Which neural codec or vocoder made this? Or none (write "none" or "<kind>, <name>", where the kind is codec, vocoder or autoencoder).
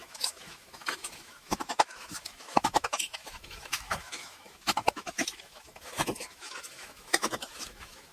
autoencoder, DAC-VAE